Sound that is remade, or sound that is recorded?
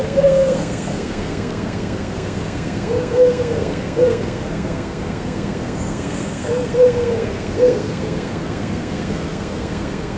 remade